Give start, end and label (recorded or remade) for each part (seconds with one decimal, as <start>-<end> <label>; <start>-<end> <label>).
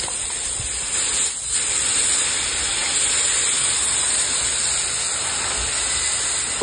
0.0-6.6 recorded